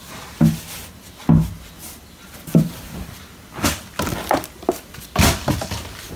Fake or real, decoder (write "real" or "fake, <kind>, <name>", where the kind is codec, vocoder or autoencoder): real